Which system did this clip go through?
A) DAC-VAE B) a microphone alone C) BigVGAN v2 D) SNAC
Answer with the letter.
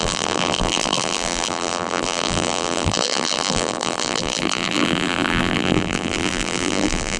C